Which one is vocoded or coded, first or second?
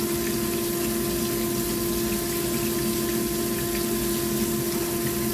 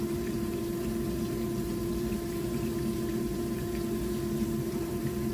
second